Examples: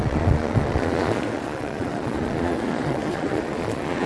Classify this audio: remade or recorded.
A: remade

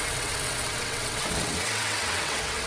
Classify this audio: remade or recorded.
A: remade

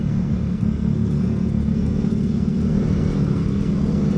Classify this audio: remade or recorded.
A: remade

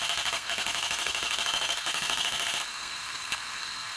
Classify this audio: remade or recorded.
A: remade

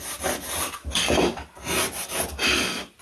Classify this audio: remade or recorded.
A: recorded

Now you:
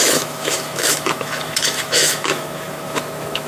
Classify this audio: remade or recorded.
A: remade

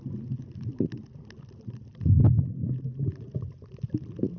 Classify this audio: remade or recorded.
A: recorded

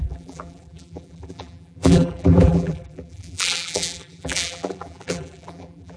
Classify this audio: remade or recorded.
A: remade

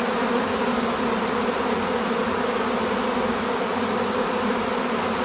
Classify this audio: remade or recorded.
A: recorded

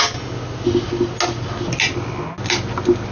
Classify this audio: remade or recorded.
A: recorded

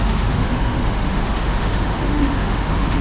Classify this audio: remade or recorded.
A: remade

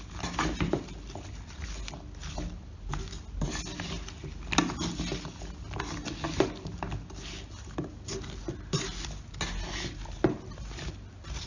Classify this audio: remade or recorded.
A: recorded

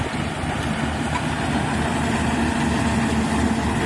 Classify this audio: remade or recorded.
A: recorded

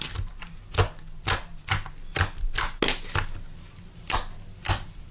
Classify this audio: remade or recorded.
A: recorded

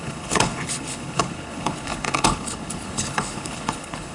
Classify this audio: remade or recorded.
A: remade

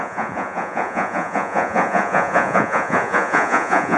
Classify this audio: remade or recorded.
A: remade